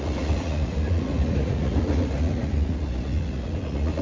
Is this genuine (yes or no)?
no